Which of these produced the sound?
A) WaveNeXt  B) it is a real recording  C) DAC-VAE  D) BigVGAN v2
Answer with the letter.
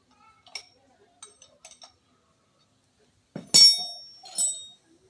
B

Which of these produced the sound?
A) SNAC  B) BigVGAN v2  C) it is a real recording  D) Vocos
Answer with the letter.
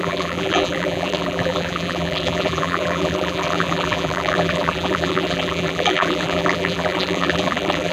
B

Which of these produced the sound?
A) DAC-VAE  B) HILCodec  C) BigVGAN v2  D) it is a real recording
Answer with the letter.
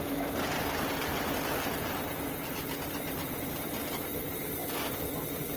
D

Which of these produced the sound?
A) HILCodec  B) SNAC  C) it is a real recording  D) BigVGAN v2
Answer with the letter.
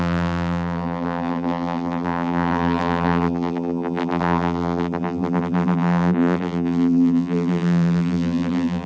D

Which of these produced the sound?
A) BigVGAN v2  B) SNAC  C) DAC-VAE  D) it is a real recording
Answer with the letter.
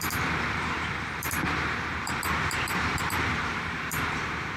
A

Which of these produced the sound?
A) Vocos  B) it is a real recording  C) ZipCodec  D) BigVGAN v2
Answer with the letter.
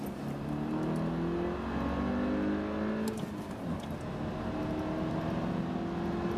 B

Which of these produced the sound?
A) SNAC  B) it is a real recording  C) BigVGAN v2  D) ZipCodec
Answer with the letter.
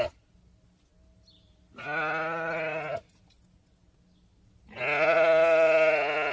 B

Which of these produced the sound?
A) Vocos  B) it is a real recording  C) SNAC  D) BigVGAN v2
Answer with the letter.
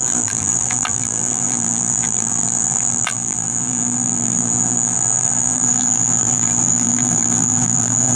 D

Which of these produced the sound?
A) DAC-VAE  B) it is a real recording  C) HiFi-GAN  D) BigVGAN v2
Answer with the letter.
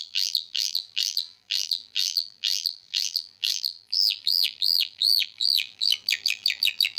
D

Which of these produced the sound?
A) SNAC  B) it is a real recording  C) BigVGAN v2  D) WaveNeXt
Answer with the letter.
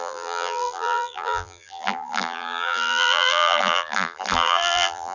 C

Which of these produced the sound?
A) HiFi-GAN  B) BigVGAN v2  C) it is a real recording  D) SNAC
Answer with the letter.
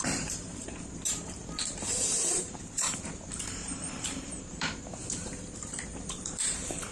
B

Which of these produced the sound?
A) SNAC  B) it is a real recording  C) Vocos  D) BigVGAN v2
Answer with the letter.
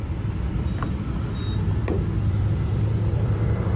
D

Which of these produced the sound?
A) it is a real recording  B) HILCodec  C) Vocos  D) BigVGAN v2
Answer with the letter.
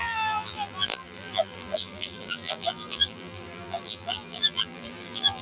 D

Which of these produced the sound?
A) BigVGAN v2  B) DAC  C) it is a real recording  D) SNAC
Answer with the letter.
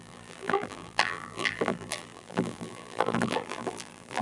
A